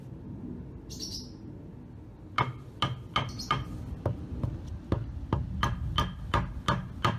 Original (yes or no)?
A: yes